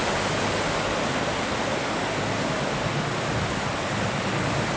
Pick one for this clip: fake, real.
real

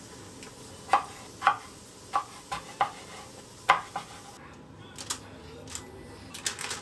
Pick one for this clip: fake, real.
real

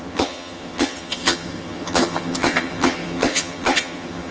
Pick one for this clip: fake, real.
fake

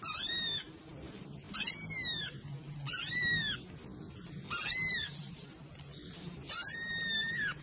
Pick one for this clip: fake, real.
real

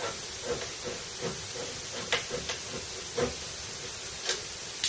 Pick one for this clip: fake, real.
real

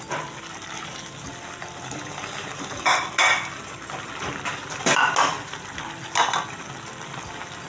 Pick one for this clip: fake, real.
real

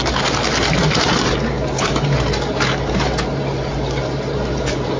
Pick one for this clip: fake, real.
fake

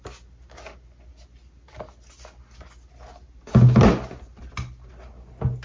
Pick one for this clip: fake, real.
real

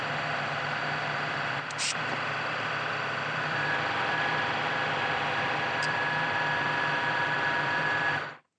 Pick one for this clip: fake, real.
fake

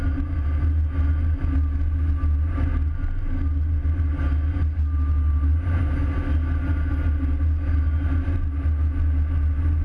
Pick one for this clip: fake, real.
real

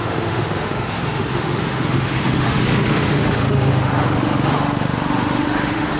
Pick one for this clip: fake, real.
fake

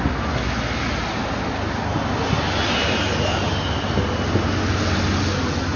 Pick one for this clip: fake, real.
real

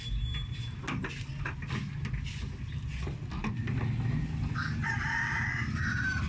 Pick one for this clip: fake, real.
real